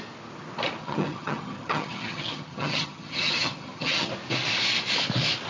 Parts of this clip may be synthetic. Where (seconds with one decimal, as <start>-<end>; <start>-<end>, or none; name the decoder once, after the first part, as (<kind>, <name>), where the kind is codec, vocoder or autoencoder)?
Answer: 0.8-4.1 (vocoder, HiFi-GAN)